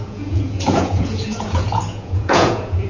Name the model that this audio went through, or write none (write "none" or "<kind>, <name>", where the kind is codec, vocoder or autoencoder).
vocoder, Vocos